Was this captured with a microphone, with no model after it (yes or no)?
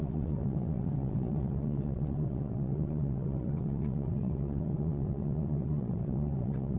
no